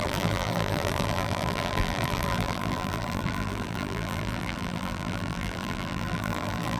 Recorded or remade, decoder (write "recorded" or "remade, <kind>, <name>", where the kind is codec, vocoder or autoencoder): remade, vocoder, BigVGAN v2